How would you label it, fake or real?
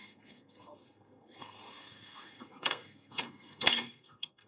fake